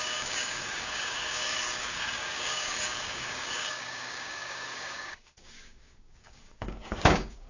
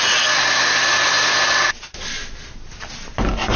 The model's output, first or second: first